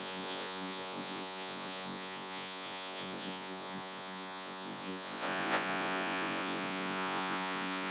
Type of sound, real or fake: fake